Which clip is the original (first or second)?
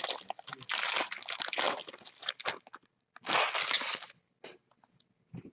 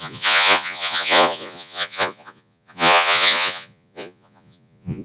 first